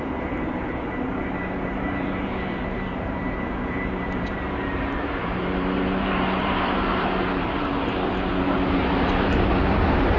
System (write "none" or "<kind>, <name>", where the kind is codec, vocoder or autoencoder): vocoder, BigVGAN v2